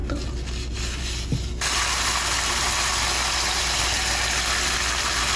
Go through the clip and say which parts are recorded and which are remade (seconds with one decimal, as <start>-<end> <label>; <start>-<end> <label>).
0.0-5.4 recorded

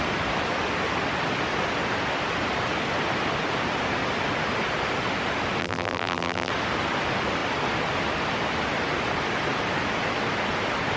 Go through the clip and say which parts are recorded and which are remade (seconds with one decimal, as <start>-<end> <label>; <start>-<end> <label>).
0.0-5.6 recorded; 5.6-6.5 remade; 6.5-11.0 recorded

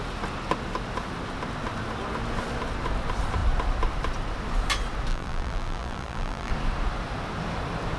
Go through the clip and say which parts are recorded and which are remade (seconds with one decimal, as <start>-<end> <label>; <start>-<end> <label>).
0.0-5.1 recorded; 5.1-6.5 remade; 6.5-8.0 recorded

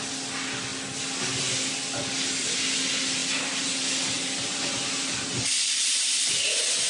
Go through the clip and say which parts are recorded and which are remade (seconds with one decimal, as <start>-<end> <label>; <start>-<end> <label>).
0.0-6.9 recorded

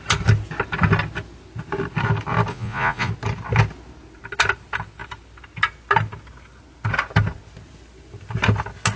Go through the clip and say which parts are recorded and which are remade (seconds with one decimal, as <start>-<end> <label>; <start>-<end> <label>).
0.0-2.5 recorded; 2.5-3.1 remade; 3.1-9.0 recorded

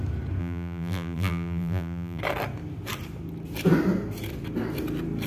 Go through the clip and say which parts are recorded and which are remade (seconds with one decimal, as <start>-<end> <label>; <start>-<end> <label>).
0.0-0.4 recorded; 0.4-2.2 remade; 2.2-5.3 recorded

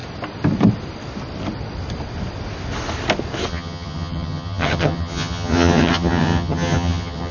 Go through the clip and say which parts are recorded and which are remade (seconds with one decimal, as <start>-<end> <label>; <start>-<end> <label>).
0.0-3.5 recorded; 3.5-7.3 remade